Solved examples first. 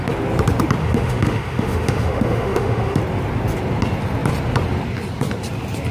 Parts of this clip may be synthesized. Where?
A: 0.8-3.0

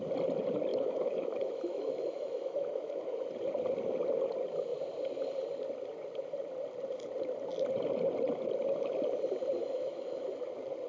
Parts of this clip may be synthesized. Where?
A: 0.7-3.3; 9.6-10.5

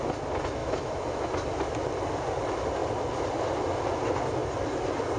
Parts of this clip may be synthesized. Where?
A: 0.6-1.3

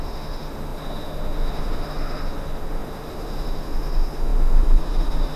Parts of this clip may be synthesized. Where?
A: 0.0-5.4

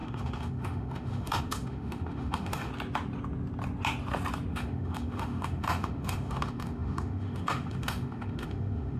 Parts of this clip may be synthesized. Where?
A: 0.0-2.7; 4.5-9.0

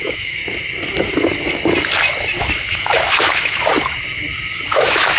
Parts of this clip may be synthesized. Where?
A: 0.0-0.4; 2.4-3.7; 4.6-5.2

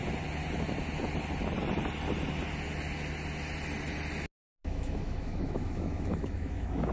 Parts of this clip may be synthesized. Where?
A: 4.6-6.9

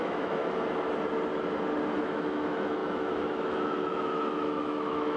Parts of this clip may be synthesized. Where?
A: 0.0-0.4; 2.0-5.2